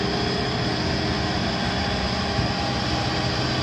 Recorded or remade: recorded